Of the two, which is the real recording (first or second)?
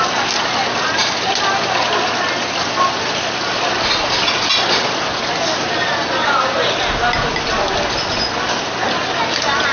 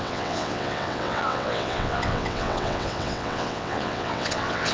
first